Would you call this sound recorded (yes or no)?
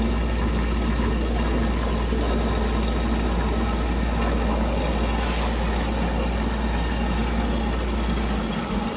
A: yes